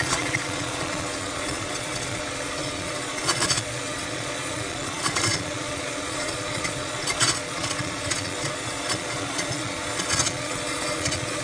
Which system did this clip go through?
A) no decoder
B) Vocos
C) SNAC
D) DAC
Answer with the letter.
B